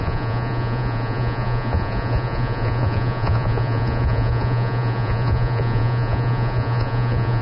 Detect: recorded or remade remade